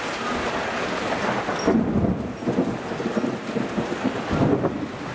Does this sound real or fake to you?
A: real